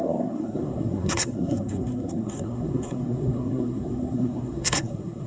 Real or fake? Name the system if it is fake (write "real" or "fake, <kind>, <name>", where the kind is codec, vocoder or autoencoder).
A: fake, codec, SNAC